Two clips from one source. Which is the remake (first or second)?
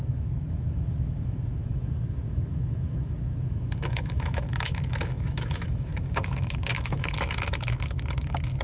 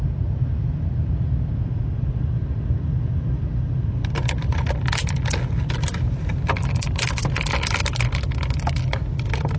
first